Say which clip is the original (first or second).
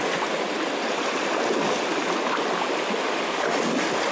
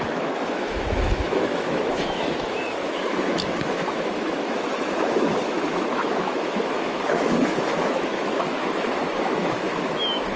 first